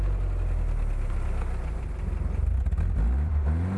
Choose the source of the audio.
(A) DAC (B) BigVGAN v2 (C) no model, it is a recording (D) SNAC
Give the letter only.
C